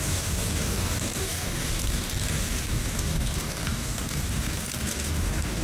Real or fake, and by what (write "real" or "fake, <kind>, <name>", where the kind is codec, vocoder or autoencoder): fake, codec, DAC